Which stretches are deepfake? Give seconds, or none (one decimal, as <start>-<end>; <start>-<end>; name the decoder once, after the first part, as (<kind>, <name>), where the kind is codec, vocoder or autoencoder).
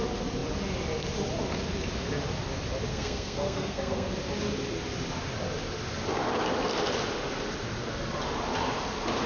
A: 2.9-4.1 (codec, SNAC)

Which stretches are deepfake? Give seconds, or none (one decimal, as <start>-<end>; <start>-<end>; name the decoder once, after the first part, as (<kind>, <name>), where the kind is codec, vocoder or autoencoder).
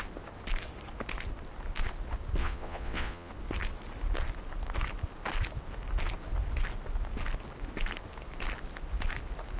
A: 2.4-3.3 (vocoder, Vocos)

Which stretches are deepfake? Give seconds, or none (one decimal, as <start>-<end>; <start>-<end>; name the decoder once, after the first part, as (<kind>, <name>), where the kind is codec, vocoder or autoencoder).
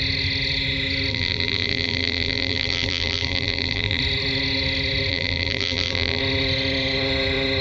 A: 1.1-4.0 (vocoder, BigVGAN v2); 5.1-6.2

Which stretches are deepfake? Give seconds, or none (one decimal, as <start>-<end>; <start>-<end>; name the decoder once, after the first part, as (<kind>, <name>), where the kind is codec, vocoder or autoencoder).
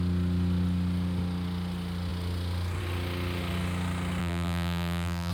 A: 4.2-5.3 (vocoder, BigVGAN v2)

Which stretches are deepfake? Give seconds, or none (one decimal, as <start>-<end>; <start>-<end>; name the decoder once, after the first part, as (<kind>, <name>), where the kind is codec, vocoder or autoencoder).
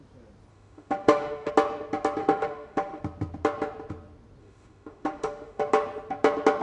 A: 0.5-1.5 (autoencoder, DAC-VAE); 2.2-3.0; 4.4-5.7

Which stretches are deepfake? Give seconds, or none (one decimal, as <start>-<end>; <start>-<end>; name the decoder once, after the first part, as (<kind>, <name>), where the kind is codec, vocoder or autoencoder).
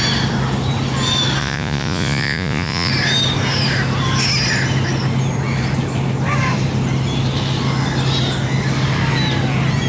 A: 1.4-2.9 (vocoder, Vocos)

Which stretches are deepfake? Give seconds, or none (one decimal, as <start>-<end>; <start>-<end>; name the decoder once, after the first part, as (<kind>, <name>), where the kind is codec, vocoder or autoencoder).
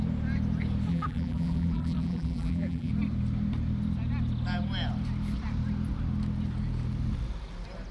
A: 0.9-2.9 (vocoder, BigVGAN v2)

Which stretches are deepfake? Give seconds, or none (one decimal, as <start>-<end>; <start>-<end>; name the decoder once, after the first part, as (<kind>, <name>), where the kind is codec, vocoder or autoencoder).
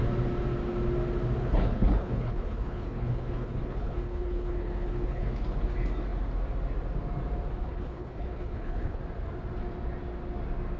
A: 1.4-5.3 (codec, HILCodec); 7.6-9.0